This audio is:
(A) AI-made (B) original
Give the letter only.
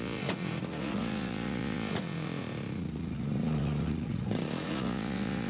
A